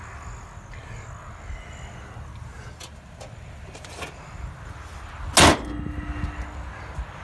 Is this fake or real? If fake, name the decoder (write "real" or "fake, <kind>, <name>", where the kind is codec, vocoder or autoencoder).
real